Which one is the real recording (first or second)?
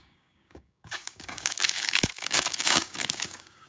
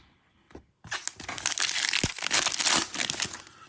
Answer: second